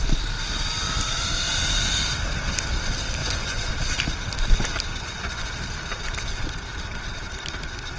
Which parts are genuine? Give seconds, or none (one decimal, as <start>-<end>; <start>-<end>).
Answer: 0.0-3.2; 3.7-4.9; 5.5-8.0